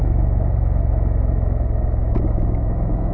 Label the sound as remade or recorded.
remade